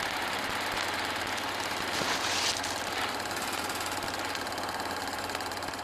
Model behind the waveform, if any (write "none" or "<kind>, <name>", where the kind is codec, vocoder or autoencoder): none